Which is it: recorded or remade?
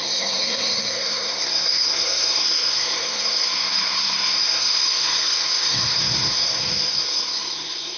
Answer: remade